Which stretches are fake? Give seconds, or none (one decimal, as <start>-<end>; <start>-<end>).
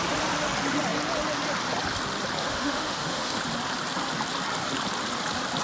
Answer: 2.4-3.4